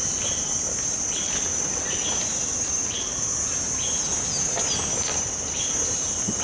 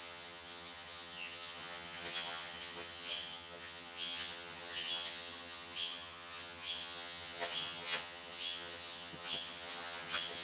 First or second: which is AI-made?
second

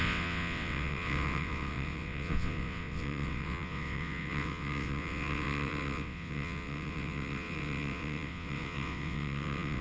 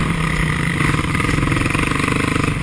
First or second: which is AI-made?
first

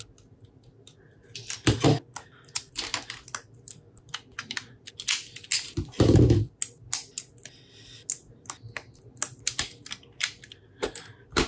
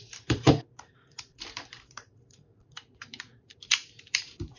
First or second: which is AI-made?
second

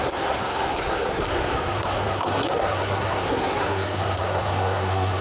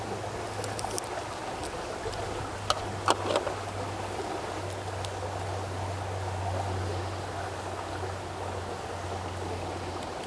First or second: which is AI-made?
first